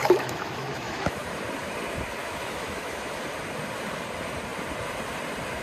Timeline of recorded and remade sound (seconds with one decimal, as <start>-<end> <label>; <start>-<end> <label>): 0.0-1.2 remade; 1.2-2.2 recorded; 2.2-3.1 remade; 3.1-5.6 recorded